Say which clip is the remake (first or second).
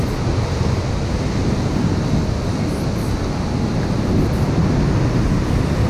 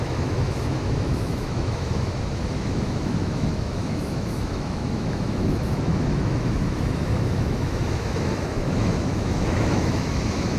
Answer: second